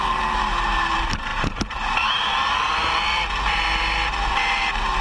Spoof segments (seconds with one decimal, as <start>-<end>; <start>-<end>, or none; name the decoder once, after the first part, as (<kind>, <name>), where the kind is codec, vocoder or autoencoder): 0.0-5.0 (vocoder, BigVGAN v2)